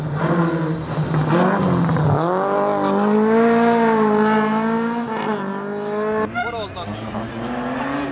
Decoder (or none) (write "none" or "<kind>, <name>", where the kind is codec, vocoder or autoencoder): none